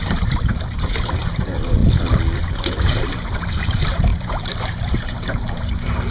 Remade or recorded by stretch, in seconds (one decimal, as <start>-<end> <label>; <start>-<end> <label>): 0.0-1.8 remade; 1.8-2.4 recorded; 2.4-6.1 remade